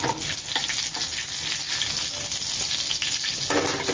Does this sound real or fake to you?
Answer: real